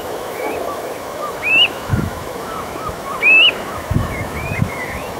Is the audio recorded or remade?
remade